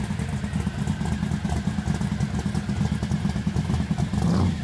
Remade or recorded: recorded